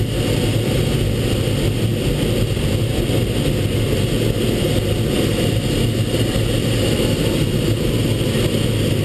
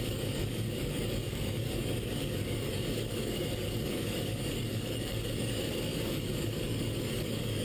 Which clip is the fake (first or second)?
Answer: second